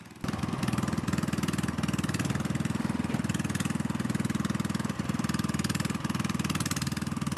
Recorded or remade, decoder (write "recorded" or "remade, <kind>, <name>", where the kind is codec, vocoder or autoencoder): recorded